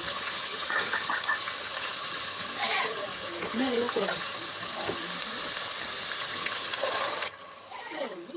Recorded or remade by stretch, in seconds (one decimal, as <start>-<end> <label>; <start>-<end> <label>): 0.0-5.0 remade; 5.0-6.2 recorded; 6.2-8.4 remade